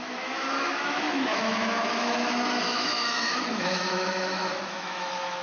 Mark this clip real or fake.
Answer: fake